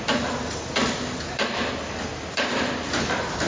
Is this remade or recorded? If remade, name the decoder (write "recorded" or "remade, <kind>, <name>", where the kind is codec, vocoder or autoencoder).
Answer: recorded